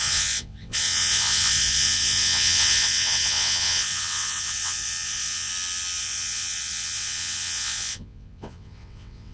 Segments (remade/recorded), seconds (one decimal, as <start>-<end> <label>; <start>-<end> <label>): 0.0-5.5 remade; 5.5-6.0 recorded; 6.0-9.3 remade